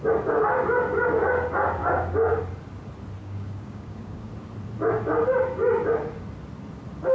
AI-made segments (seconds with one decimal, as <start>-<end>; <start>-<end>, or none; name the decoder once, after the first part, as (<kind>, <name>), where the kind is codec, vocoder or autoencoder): 1.8-2.4 (codec, DAC); 3.2-4.3